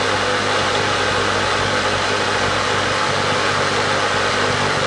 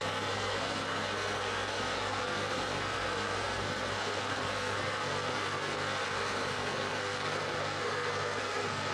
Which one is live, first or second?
first